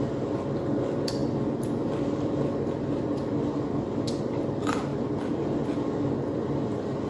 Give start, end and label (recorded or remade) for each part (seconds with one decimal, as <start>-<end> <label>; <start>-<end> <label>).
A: 0.0-7.1 recorded